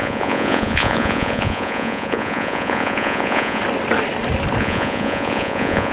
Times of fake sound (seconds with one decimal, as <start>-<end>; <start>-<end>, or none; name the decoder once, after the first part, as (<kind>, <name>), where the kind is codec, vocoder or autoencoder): 0.0-3.6 (vocoder, Vocos); 4.6-5.9